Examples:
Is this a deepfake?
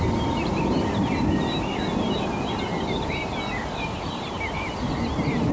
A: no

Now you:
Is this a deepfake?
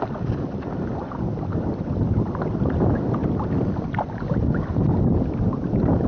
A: no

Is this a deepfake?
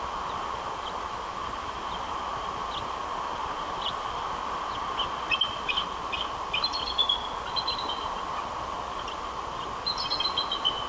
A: no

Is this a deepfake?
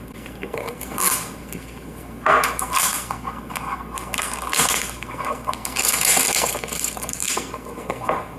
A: yes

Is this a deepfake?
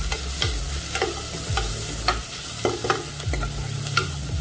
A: no